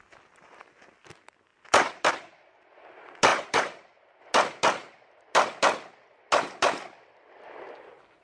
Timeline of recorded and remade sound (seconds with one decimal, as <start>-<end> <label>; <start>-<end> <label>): 0.0-3.3 recorded; 3.3-4.2 remade; 4.2-8.2 recorded